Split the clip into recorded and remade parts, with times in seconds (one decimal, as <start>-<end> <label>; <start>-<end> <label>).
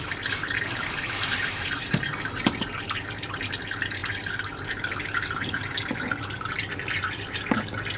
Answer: 0.0-8.0 remade